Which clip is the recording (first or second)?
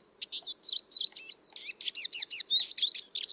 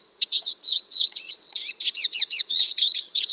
first